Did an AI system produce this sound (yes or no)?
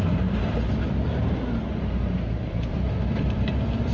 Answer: yes